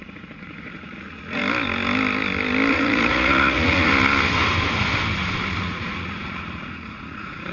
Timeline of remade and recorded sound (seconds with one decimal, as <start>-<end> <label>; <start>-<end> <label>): 0.0-1.4 remade; 1.4-2.7 recorded; 2.7-3.9 remade; 3.9-5.6 recorded; 5.6-7.5 remade